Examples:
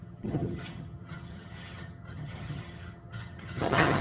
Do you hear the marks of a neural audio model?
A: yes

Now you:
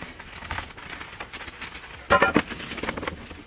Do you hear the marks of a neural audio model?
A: no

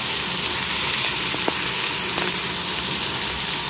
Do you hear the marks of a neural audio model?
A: no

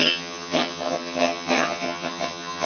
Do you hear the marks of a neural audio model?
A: yes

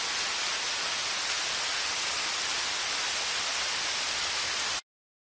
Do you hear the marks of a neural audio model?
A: no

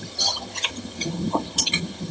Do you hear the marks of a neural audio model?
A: yes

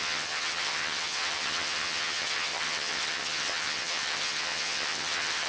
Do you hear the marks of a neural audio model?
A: yes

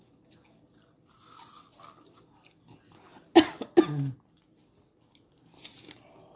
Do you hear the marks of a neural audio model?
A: no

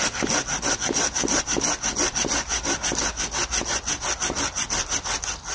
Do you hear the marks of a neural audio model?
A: no